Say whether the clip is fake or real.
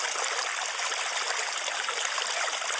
fake